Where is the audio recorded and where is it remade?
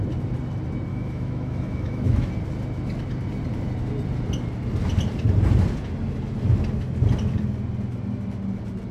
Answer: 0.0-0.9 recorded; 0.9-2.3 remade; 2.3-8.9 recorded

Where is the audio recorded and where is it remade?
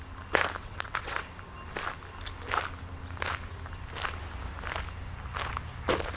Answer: 0.0-0.6 recorded; 0.6-1.2 remade; 1.2-6.2 recorded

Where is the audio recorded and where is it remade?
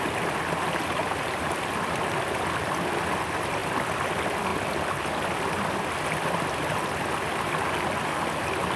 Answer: 0.0-8.8 recorded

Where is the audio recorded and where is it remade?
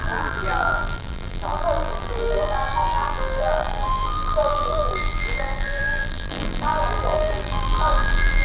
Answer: 0.0-8.4 remade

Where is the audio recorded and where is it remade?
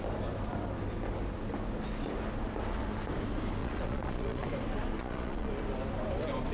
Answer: 0.0-3.6 recorded; 3.6-4.4 remade; 4.4-5.0 recorded; 5.0-5.5 remade; 5.5-6.5 recorded